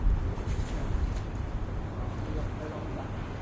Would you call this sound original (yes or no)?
no